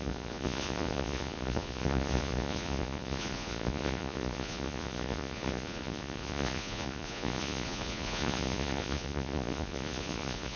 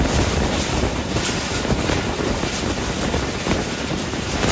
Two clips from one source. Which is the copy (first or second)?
first